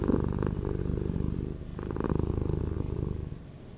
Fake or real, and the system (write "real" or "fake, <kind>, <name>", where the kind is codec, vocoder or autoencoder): real